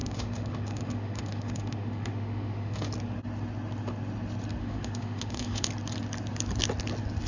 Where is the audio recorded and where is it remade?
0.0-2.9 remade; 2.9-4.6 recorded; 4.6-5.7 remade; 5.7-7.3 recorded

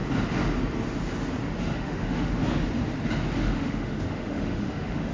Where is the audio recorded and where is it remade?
0.0-1.6 recorded; 1.6-2.4 remade; 2.4-3.4 recorded; 3.4-5.1 remade

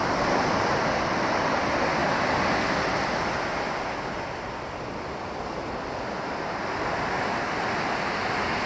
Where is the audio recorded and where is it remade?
0.0-8.7 recorded

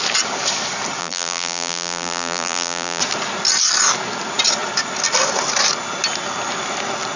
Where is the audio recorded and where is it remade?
0.0-1.0 recorded; 1.0-3.0 remade; 3.0-7.2 recorded

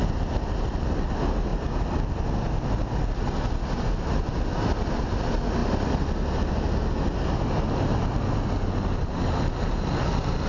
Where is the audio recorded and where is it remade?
0.0-10.5 recorded

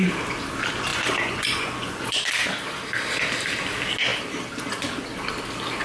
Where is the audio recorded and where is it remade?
0.0-0.9 recorded; 0.9-2.2 remade; 2.2-5.8 recorded

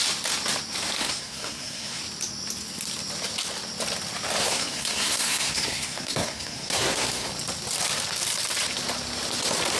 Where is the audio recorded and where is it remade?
0.0-1.0 recorded; 1.0-2.0 remade; 2.0-4.4 recorded; 4.4-7.3 remade; 7.3-9.8 recorded